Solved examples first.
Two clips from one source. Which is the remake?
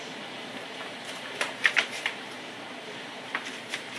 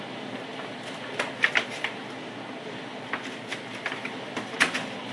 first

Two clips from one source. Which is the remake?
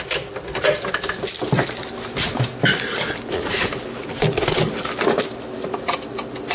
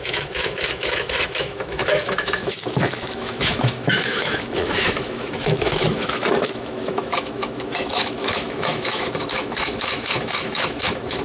second